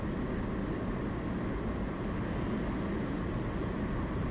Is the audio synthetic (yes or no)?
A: no